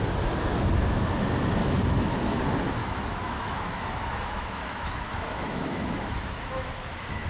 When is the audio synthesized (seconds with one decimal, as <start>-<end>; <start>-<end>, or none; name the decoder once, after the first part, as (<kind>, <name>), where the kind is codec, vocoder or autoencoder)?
1.6-2.4 (autoencoder, DAC-VAE); 2.8-7.3